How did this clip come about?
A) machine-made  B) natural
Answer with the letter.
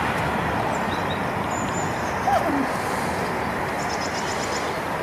B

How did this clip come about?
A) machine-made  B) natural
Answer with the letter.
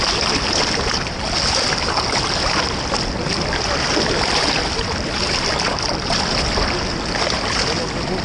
B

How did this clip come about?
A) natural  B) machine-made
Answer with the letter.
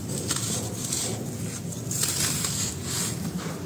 A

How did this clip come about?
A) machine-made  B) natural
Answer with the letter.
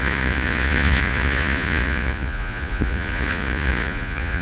A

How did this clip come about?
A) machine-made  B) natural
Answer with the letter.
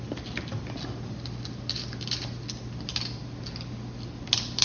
B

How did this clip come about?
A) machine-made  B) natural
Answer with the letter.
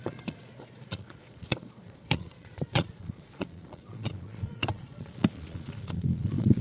A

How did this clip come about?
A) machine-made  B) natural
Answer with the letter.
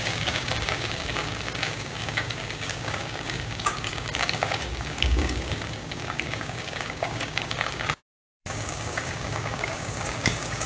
A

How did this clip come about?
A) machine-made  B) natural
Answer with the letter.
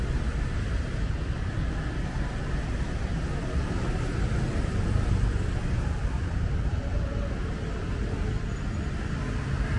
B